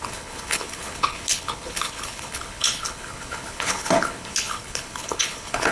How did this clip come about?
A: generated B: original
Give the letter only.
A